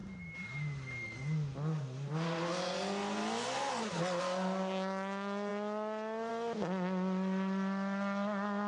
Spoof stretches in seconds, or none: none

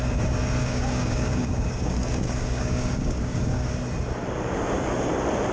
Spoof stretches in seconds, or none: 0.6-3.7 (codec, DAC)

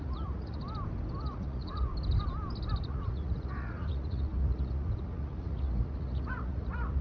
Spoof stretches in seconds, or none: 0.0-0.6 (vocoder, Vocos); 1.2-1.9; 2.9-7.0